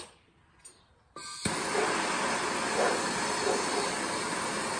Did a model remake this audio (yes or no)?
no